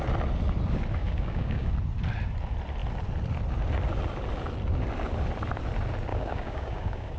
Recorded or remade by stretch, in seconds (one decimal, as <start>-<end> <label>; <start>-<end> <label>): 0.0-1.0 recorded; 1.0-1.7 remade; 1.7-6.1 recorded; 6.1-7.2 remade

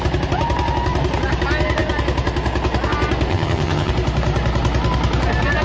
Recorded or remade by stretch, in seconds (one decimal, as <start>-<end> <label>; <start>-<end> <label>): 0.0-3.3 recorded; 3.3-3.9 remade; 3.9-5.6 recorded

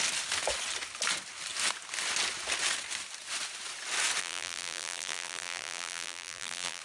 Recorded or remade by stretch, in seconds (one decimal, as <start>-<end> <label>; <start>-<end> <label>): 0.0-4.2 recorded; 4.2-6.8 remade

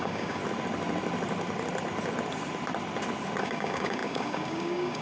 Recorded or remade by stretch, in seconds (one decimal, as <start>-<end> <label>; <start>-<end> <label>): 0.0-0.4 remade; 0.4-3.4 recorded; 3.4-5.0 remade